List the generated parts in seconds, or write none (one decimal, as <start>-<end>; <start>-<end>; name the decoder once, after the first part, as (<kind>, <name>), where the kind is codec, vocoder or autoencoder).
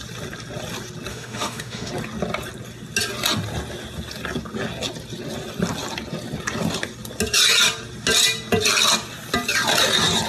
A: 1.1-1.9 (autoencoder, DAC-VAE)